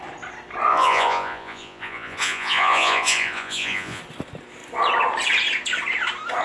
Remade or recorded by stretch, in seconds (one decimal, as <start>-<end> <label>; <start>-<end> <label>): 0.0-0.7 recorded; 0.7-4.0 remade; 4.0-6.4 recorded